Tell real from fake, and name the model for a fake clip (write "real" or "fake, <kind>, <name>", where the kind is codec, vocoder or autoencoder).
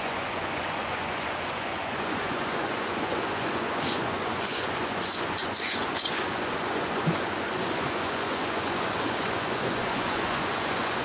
fake, vocoder, Vocos